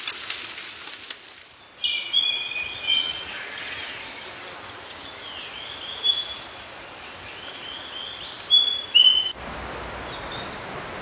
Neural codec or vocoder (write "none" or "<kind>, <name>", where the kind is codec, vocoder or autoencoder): none